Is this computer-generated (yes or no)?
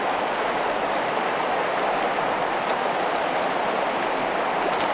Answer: no